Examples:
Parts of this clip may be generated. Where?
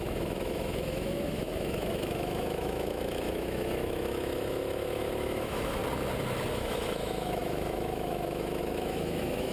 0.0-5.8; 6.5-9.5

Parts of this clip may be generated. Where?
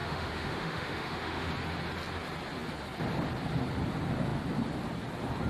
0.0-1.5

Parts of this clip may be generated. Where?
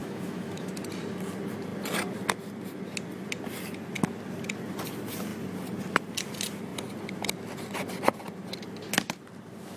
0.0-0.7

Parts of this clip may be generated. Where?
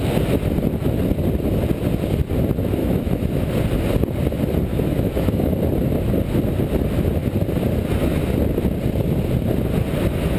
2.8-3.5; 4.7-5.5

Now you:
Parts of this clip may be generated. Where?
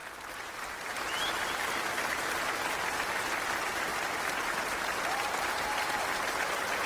none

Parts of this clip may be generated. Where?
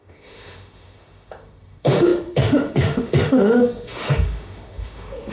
0.0-5.3